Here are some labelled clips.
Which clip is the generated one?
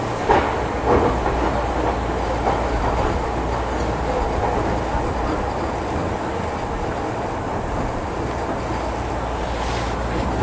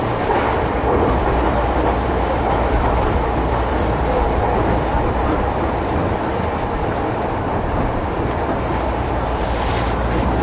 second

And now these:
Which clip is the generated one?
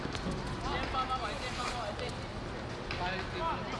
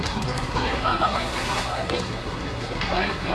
second